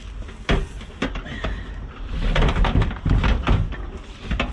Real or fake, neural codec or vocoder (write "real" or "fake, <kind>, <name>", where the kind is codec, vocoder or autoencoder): real